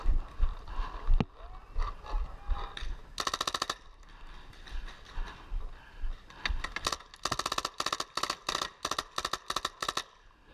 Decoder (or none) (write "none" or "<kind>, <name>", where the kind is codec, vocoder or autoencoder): none